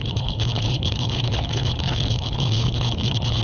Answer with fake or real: fake